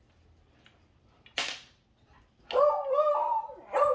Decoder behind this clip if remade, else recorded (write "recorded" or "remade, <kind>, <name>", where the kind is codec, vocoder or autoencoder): recorded